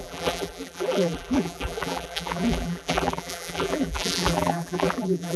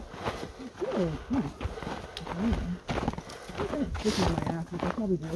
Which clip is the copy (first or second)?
first